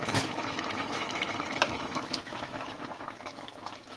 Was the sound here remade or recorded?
remade